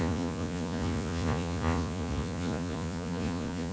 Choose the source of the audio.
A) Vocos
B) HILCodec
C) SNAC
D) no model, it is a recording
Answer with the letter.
A